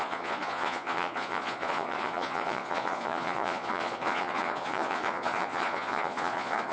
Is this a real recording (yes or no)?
no